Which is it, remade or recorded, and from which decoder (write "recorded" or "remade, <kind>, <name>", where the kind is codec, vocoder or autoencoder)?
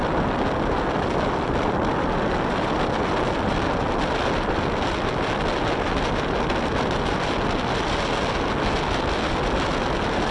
recorded